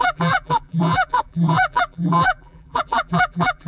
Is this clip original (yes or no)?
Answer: no